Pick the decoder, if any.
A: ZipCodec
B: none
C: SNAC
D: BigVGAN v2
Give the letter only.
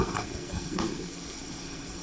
C